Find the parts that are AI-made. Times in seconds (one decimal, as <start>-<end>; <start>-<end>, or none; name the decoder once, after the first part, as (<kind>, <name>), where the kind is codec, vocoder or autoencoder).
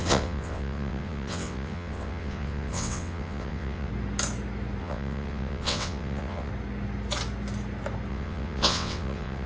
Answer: 0.0-3.9 (vocoder, WaveNeXt); 4.8-6.5; 8.1-9.5